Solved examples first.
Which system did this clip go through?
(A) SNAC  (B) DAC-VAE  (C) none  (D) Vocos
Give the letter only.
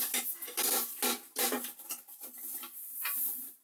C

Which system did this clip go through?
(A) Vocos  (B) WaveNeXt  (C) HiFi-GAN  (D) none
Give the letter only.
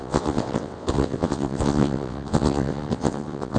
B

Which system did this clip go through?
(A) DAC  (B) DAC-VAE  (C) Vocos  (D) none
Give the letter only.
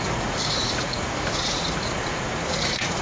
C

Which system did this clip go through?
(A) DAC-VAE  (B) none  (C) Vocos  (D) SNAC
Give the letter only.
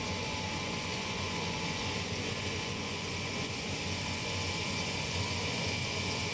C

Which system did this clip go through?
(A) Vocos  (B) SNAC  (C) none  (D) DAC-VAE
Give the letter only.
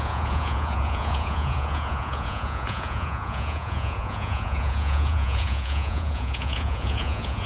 A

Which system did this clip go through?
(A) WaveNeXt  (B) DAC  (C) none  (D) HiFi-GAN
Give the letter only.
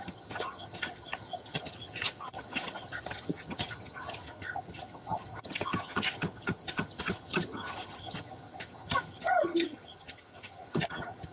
D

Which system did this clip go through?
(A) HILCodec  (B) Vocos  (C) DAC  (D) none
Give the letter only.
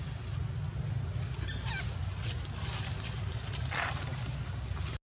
D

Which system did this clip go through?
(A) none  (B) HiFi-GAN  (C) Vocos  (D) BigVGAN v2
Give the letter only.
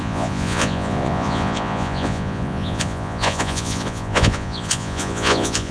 C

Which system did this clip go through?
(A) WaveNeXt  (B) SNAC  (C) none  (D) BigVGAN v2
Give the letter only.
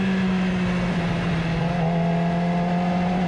C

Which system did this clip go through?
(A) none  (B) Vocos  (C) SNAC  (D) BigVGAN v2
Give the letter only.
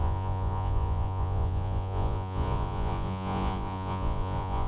B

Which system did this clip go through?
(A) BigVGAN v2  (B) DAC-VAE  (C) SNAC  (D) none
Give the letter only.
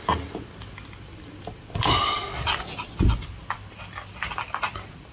D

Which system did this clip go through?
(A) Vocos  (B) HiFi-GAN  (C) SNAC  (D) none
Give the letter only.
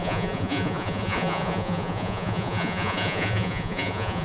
A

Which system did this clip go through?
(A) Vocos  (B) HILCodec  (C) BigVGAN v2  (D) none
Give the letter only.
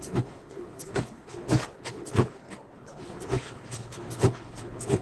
B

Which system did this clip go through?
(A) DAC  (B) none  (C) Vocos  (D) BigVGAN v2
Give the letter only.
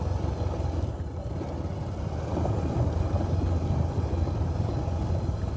B